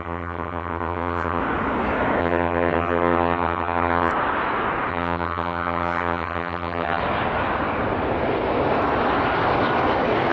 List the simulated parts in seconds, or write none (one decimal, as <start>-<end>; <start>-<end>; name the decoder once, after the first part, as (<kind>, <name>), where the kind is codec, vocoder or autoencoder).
0.0-1.4 (vocoder, HiFi-GAN); 2.2-4.1; 4.9-7.0